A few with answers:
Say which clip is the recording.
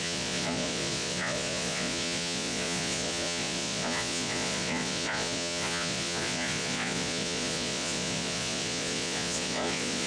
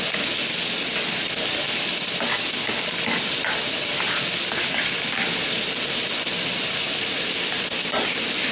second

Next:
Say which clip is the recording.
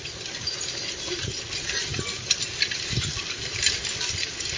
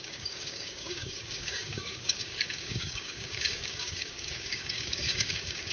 first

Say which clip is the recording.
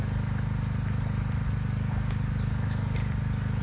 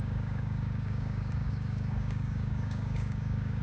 first